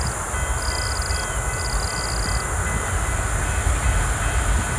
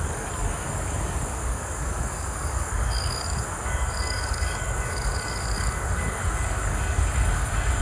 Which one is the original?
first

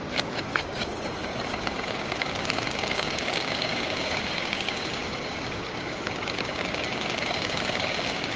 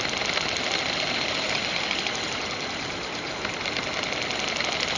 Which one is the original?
second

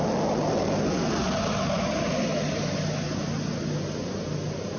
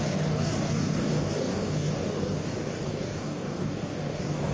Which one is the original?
first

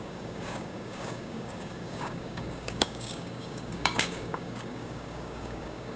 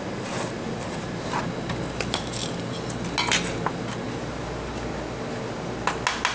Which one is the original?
second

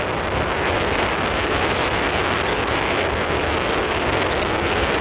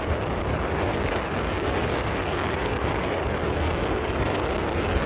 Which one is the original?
first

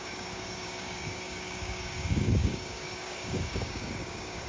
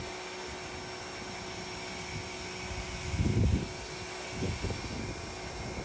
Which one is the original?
second